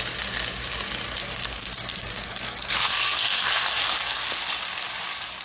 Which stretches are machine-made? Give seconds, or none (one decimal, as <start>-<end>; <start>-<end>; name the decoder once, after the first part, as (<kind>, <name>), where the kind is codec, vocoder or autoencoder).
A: 1.2-4.4 (codec, SNAC)

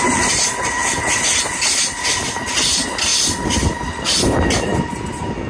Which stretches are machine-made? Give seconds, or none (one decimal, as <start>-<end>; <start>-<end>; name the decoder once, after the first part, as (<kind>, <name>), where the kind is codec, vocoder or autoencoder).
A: none

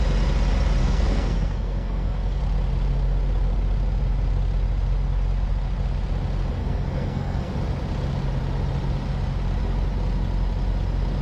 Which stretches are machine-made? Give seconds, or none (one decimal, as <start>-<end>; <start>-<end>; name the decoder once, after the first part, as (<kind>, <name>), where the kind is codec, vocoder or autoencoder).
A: 0.8-2.4 (codec, SNAC); 6.6-7.5

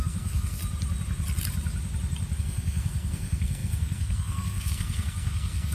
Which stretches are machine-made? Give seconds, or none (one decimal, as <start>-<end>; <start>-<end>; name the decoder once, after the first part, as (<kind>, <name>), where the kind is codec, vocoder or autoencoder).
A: 0.0-0.6 (codec, SNAC); 2.4-5.7

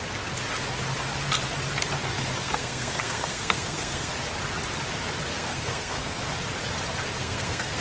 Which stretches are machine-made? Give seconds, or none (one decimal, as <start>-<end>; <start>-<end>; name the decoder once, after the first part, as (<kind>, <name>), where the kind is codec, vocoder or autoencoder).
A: 2.4-4.1 (codec, SNAC); 5.3-6.2; 7.2-7.8

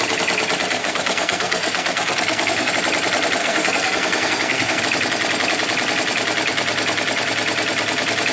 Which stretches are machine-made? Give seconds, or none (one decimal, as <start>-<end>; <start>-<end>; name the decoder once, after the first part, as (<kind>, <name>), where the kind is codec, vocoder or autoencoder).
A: 0.8-2.7 (codec, SNAC); 3.4-4.8

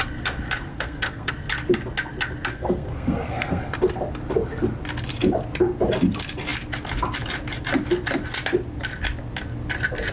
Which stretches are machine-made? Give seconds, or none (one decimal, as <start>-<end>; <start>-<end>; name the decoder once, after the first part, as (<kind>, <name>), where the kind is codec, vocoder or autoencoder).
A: 0.7-1.3 (codec, SNAC); 2.5-3.6